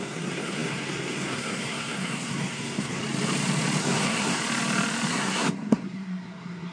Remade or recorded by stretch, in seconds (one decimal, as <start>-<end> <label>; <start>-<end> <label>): 0.0-3.0 remade; 3.0-3.8 recorded; 3.8-4.4 remade; 4.4-5.1 recorded; 5.1-6.7 remade